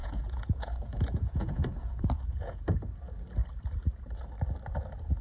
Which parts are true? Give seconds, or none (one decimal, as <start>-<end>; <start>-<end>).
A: 2.6-5.2